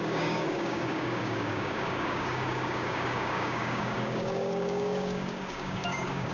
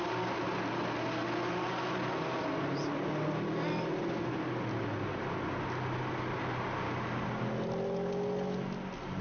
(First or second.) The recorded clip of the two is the second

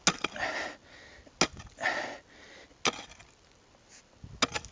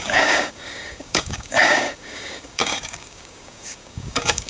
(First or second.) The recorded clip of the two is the first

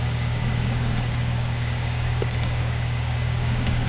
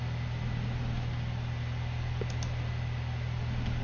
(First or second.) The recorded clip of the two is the second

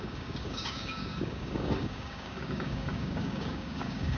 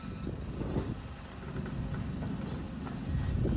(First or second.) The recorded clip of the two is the second